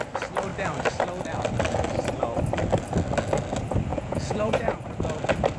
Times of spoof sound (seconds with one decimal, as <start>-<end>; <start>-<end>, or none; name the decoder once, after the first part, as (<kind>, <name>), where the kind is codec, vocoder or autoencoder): 3.9-4.8 (vocoder, Vocos)